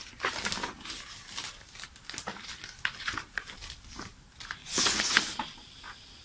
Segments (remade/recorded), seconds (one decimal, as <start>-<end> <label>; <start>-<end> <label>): 0.0-4.6 recorded; 4.6-5.2 remade; 5.2-6.2 recorded

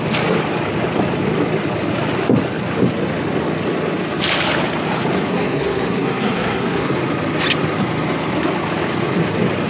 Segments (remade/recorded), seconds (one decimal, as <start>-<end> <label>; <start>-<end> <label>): 0.0-5.3 recorded; 5.3-6.9 remade; 6.9-9.7 recorded